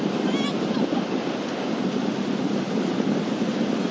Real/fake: real